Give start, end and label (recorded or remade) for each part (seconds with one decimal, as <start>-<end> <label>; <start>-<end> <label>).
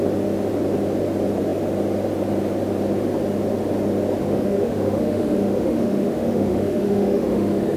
0.0-4.2 recorded; 4.2-7.8 remade